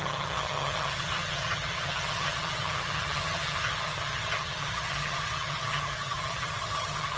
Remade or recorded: remade